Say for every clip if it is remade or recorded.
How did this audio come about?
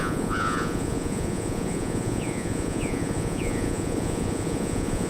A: remade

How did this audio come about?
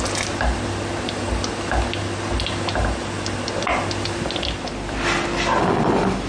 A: recorded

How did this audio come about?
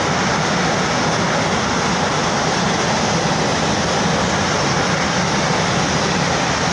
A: recorded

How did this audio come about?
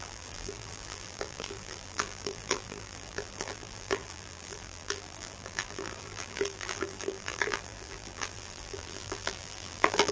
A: remade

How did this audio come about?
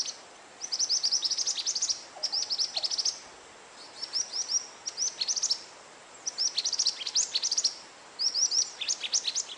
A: recorded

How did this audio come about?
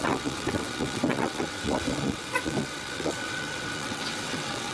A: remade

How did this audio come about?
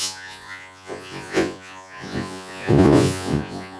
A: remade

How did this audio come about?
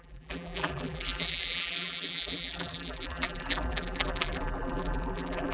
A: remade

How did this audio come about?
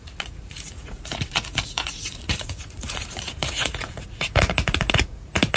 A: remade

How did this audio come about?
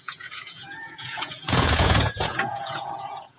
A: remade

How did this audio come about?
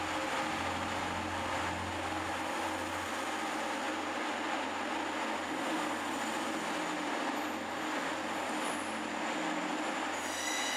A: recorded